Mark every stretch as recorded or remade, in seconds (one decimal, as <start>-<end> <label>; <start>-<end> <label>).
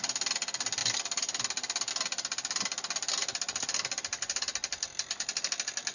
0.0-5.9 recorded